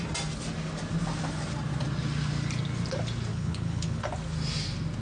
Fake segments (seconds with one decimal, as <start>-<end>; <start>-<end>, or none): 3.3-4.0